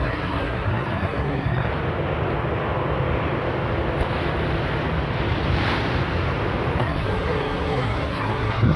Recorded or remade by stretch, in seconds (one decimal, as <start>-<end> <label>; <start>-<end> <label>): 0.0-1.7 remade; 1.7-6.8 recorded; 6.8-8.8 remade